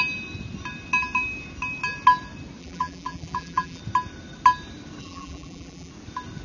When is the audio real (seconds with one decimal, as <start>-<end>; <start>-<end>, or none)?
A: 0.0-2.6; 3.8-5.0; 5.9-6.4